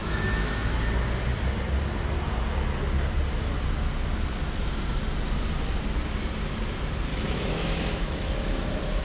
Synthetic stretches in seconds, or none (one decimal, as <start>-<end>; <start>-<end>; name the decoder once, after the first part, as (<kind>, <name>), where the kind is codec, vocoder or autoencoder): 0.0-0.7 (autoencoder, DAC-VAE); 7.1-8.3